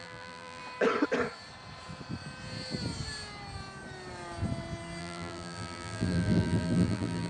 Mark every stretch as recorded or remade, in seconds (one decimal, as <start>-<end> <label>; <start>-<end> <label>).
0.0-0.6 remade; 0.6-5.0 recorded; 5.0-7.3 remade